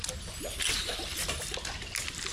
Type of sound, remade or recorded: recorded